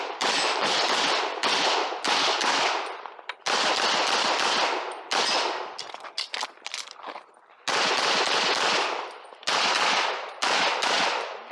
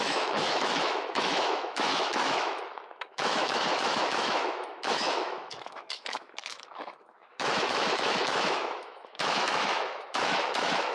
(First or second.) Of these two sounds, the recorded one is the first